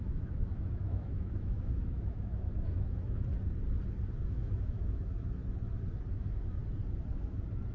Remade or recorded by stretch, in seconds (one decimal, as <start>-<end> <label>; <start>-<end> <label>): 0.0-3.3 remade; 3.3-4.3 recorded; 4.3-5.4 remade; 5.4-6.1 recorded; 6.1-6.6 remade; 6.6-7.7 recorded